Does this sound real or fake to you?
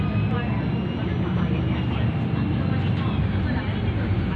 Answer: real